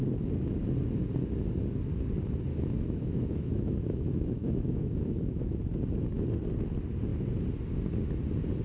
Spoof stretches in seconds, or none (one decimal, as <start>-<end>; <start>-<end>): 2.5-5.6